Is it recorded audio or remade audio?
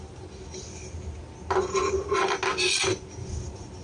recorded